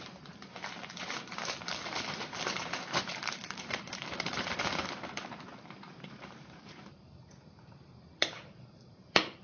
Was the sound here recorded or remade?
remade